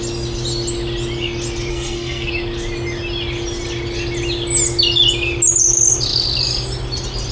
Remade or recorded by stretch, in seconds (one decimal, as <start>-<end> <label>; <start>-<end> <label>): 0.0-1.7 recorded; 1.7-2.3 remade; 2.3-7.3 recorded